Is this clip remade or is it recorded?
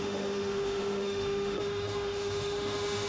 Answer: remade